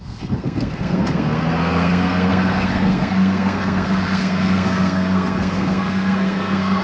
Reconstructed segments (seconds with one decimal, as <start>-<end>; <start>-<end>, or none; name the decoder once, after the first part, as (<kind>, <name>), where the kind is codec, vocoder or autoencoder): 0.0-6.8 (codec, SNAC)